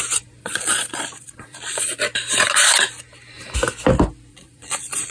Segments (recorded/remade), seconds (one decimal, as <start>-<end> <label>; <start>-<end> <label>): 0.0-0.4 recorded; 0.4-2.0 remade; 2.0-4.3 recorded; 4.3-5.1 remade